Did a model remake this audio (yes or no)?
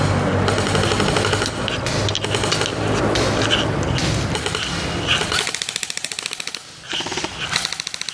no